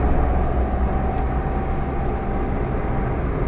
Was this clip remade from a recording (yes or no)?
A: no